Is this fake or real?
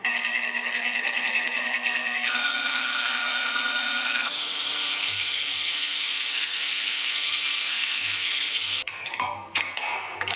fake